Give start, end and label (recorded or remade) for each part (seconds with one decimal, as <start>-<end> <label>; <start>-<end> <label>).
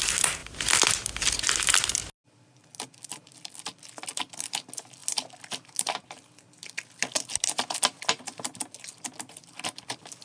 0.0-10.2 recorded